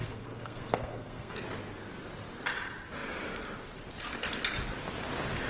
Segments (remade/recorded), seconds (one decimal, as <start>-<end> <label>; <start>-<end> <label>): 0.0-1.4 remade; 1.4-5.5 recorded

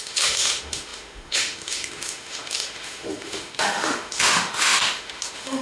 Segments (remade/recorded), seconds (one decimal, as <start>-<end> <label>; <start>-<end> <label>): 0.0-5.6 remade

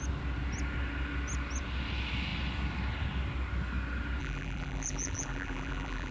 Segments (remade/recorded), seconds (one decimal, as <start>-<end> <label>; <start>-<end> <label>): 0.0-4.2 recorded; 4.2-6.1 remade